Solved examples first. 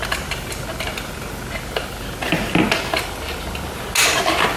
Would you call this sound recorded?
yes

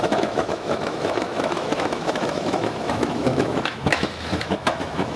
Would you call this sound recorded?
no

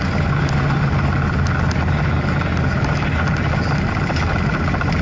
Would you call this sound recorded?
yes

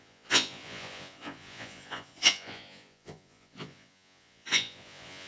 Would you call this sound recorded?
no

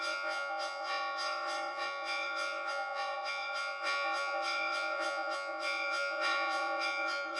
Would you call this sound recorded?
no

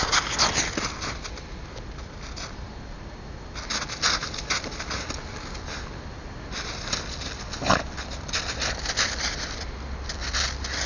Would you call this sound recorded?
yes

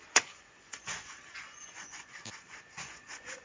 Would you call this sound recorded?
no